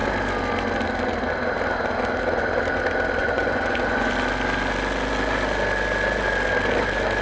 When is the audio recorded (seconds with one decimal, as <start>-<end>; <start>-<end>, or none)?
0.0-3.2; 4.1-7.2